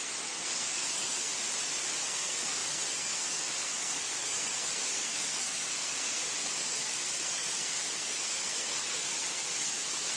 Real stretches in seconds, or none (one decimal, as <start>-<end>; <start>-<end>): 1.3-2.0